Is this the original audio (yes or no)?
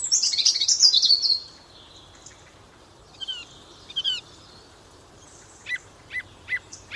no